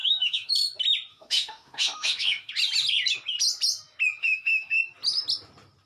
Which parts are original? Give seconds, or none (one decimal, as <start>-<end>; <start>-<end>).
0.5-1.1; 2.5-4.2; 4.8-5.9